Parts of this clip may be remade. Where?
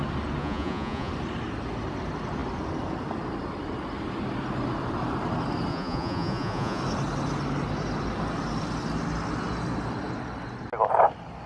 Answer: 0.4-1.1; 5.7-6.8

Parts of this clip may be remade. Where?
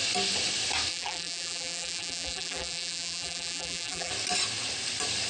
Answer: 0.9-4.1